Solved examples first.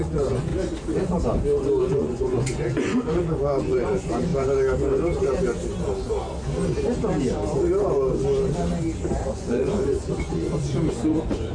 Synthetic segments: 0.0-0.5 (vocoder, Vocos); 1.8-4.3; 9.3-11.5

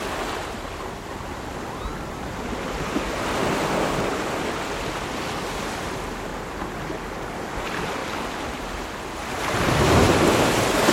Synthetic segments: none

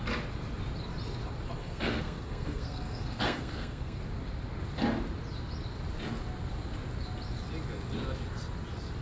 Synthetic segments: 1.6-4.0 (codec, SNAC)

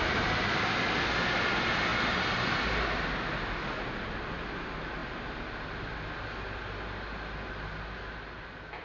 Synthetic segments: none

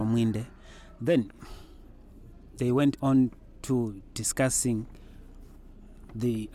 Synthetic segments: none